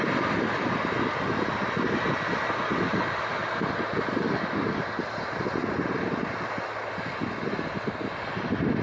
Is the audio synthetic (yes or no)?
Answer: no